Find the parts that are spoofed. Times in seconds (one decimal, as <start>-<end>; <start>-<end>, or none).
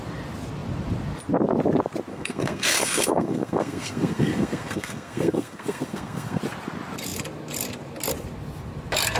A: 2.1-6.4